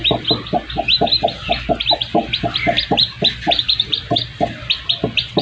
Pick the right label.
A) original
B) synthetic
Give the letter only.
A